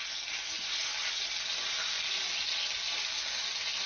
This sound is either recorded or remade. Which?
recorded